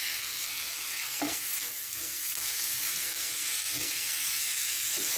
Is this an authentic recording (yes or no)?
no